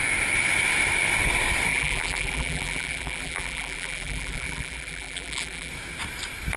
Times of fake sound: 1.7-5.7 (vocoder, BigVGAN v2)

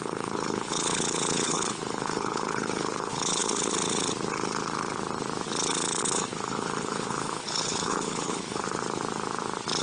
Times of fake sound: 0.0-3.4 (codec, HILCodec); 6.0-8.6

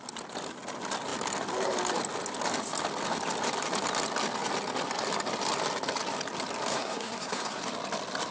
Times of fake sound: 6.7-7.6 (codec, SNAC)